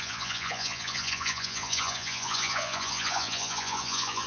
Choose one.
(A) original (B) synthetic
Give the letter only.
B